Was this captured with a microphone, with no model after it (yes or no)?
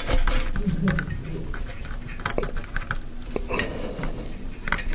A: yes